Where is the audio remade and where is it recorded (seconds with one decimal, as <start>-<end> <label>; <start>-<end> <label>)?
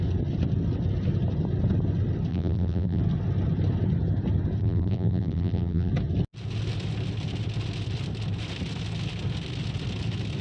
0.0-2.3 recorded; 2.3-3.0 remade; 3.0-4.6 recorded; 4.6-5.9 remade; 5.9-10.4 recorded